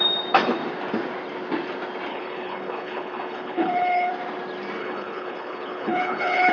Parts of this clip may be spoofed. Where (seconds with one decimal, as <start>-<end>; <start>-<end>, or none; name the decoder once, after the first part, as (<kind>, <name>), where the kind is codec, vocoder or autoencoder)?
2.1-4.1 (codec, HILCodec); 4.8-6.5